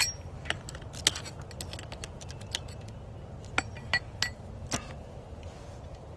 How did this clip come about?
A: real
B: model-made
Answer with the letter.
A